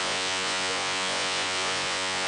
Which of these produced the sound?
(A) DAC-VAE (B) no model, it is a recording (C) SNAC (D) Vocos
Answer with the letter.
D